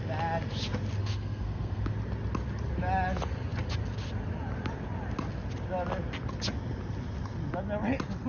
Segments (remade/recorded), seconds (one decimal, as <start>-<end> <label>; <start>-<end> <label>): 0.0-1.0 recorded; 1.0-1.8 remade; 1.8-8.3 recorded